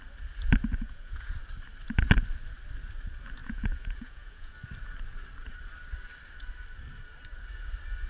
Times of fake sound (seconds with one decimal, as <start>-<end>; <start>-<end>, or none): 0.7-1.3; 3.4-4.5